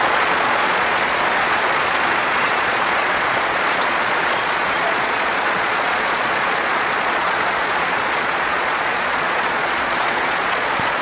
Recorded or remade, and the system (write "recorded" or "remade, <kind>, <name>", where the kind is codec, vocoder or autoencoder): remade, vocoder, Vocos